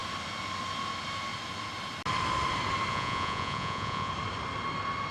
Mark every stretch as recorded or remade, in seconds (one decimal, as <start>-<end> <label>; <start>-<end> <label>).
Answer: 0.0-2.9 recorded; 2.9-4.1 remade; 4.1-5.1 recorded